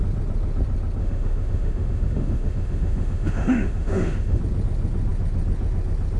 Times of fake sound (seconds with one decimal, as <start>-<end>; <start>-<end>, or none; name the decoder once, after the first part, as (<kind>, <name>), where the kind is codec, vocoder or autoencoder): 1.0-4.4 (autoencoder, DAC-VAE)